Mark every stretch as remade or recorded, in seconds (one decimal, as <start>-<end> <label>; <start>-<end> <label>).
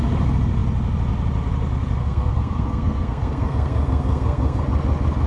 0.0-2.0 recorded; 2.0-4.6 remade; 4.6-5.3 recorded